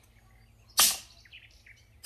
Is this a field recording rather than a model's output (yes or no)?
yes